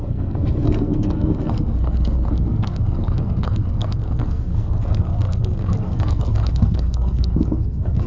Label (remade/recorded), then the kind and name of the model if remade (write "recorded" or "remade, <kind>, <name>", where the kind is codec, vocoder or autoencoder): remade, codec, SNAC